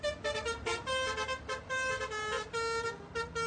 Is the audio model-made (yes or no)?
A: no